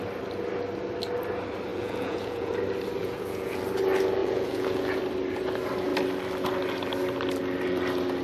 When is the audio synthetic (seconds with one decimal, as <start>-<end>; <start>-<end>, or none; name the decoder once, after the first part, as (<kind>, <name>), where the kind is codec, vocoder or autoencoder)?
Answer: 1.7-2.5 (vocoder, Vocos); 3.0-3.6; 4.2-5.0

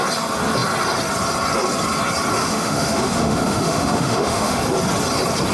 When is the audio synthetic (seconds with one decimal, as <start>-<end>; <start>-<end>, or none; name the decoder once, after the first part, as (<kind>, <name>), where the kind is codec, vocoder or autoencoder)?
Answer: 2.4-4.6 (autoencoder, DAC-VAE)

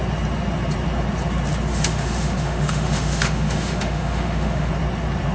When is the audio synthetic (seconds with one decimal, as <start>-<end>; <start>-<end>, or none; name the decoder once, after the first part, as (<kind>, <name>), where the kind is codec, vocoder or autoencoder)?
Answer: 1.7-4.7 (autoencoder, DAC-VAE)

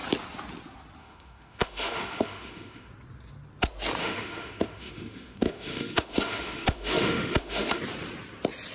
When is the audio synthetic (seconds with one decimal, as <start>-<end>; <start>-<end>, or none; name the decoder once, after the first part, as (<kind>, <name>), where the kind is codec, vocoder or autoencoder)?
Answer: 1.0-2.9 (autoencoder, DAC-VAE); 4.0-7.8

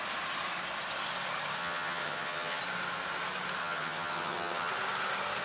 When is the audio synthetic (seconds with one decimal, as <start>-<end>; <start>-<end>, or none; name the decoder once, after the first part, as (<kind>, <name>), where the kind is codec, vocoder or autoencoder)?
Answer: 1.6-2.6 (vocoder, HiFi-GAN); 3.6-4.7

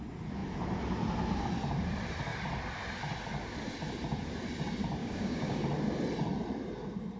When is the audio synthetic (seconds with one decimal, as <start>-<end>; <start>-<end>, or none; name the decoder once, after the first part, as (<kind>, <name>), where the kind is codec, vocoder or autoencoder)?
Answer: 5.0-5.6 (codec, DAC)

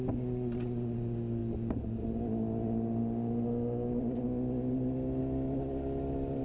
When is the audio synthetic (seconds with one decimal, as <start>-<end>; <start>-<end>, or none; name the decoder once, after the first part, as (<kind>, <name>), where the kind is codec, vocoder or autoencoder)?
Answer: none